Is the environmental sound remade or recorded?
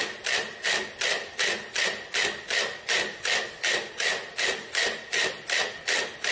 recorded